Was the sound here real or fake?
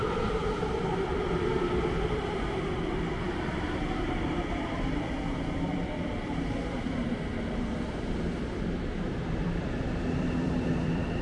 fake